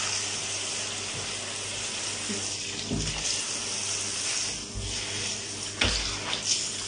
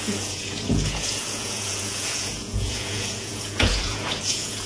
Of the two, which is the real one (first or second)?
first